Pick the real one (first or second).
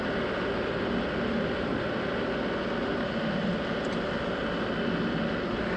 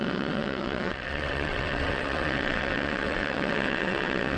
first